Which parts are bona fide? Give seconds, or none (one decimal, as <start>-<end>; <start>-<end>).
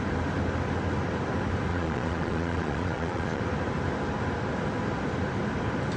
0.0-1.7; 3.4-6.0